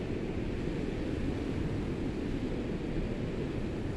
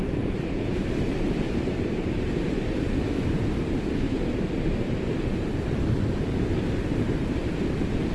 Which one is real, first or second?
first